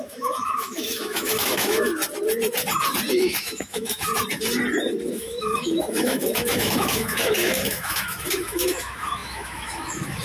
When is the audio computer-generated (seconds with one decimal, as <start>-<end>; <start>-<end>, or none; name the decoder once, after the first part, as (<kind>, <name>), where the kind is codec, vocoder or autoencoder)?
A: 0.0-1.9 (autoencoder, DAC-VAE); 3.1-4.1; 5.1-10.2